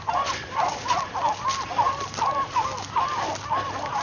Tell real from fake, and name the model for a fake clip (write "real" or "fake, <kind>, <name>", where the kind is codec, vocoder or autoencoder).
real